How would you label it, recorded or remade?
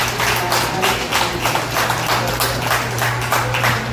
recorded